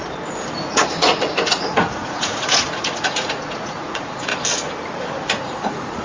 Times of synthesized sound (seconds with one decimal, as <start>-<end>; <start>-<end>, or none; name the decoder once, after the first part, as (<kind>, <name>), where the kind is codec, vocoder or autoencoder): 0.6-4.3 (vocoder, Vocos); 5.4-6.0